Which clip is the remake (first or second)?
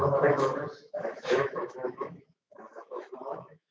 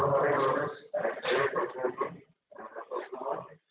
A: first